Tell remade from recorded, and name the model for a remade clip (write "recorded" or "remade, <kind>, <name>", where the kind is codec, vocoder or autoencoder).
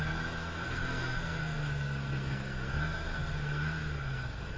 remade, codec, SNAC